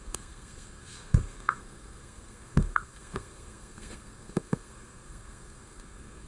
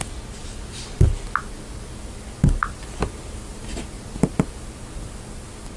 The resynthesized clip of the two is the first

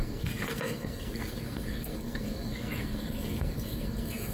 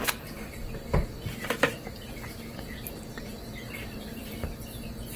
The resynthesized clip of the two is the first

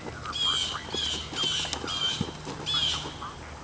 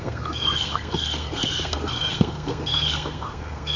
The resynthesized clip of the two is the second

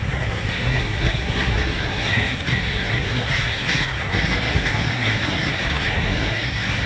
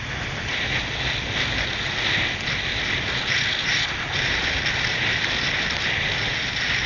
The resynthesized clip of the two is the first